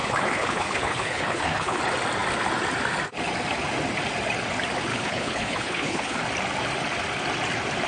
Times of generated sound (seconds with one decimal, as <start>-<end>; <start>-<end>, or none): 0.0-1.8; 4.9-6.2